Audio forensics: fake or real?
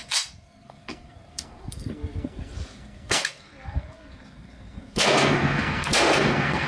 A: fake